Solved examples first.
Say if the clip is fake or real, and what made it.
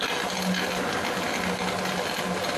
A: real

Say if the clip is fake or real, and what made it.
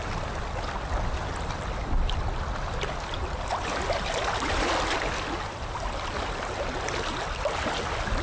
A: real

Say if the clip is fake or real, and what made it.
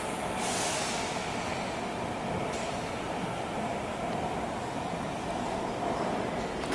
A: real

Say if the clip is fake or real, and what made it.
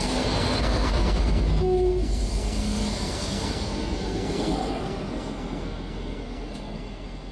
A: fake, codec, SNAC